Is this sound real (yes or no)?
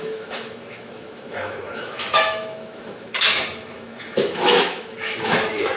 no